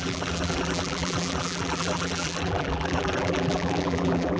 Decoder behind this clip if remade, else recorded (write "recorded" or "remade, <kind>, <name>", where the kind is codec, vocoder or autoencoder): remade, vocoder, BigVGAN v2